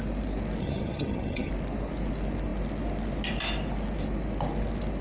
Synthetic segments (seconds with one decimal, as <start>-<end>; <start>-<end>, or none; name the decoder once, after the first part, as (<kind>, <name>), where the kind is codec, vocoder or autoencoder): 0.6-1.5 (vocoder, HiFi-GAN)